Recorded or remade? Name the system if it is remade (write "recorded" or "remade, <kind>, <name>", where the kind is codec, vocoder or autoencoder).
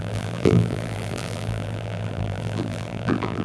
remade, vocoder, BigVGAN v2